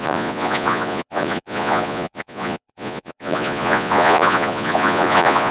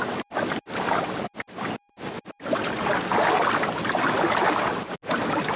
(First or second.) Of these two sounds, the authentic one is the second